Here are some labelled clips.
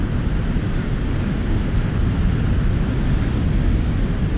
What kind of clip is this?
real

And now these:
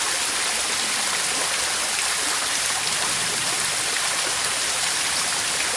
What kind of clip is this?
real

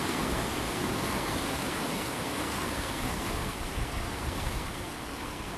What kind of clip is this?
fake